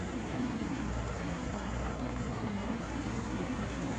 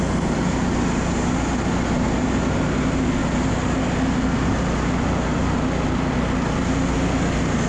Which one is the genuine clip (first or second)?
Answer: second